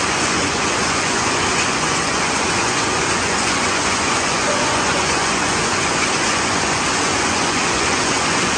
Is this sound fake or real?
fake